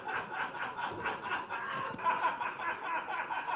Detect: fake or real real